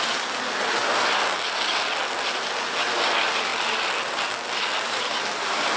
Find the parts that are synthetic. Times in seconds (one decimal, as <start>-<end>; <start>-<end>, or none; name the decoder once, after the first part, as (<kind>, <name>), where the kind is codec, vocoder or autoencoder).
none